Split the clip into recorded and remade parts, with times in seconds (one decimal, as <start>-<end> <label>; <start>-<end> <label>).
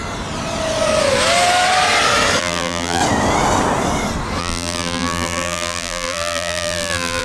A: 0.0-2.4 recorded; 2.4-3.0 remade; 3.0-4.4 recorded; 4.4-7.2 remade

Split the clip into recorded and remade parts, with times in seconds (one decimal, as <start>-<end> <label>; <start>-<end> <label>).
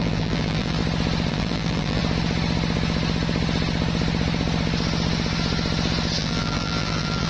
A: 0.0-0.8 remade; 0.8-1.3 recorded; 1.3-2.0 remade; 2.0-6.2 recorded; 6.2-7.3 remade